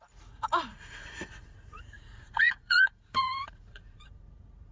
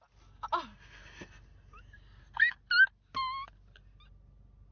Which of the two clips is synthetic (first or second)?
first